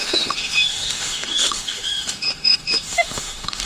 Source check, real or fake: fake